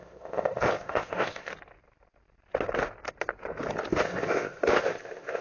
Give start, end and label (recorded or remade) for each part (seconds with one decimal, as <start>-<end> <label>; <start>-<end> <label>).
0.0-1.5 remade; 1.5-4.0 recorded; 4.0-5.4 remade